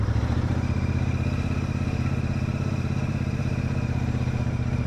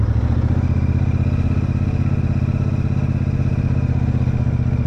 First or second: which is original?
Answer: second